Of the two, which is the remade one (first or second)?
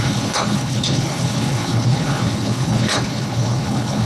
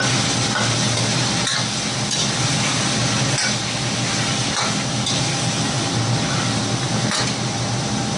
first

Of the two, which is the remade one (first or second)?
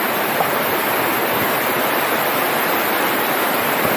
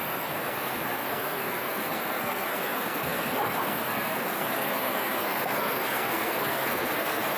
second